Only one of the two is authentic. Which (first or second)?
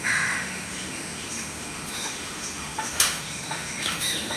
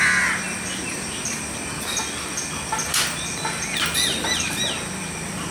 second